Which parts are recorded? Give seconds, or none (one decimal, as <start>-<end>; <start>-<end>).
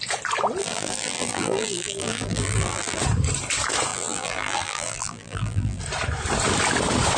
0.0-0.6; 3.0-3.9; 5.8-7.2